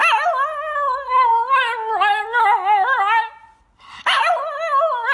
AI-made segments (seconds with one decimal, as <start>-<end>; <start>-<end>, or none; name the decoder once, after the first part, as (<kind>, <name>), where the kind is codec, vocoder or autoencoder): none